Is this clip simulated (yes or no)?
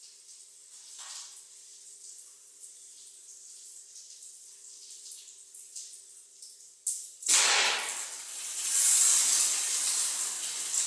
no